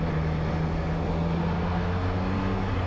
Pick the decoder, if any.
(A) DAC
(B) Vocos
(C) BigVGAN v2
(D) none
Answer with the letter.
D